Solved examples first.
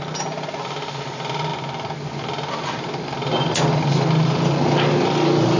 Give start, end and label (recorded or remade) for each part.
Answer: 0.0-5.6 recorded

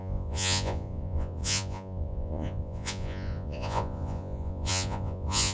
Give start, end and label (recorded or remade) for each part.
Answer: 0.0-5.5 remade

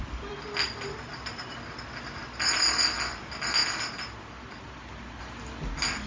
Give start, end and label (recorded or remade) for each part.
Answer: 0.0-6.1 recorded

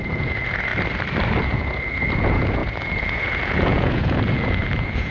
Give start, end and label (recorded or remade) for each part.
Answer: 0.0-0.7 remade; 0.7-1.4 recorded; 1.4-5.1 remade